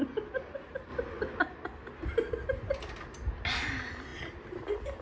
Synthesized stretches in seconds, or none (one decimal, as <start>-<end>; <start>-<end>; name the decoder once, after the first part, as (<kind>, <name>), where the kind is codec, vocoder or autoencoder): none